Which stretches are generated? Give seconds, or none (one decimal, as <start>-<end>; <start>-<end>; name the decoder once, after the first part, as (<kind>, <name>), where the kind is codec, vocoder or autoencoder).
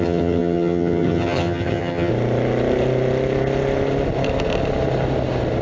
0.0-2.1 (vocoder, HiFi-GAN)